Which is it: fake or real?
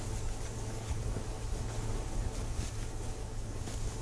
fake